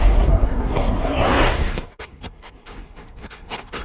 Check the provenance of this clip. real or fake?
fake